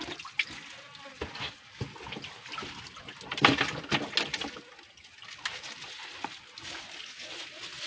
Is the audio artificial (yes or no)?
no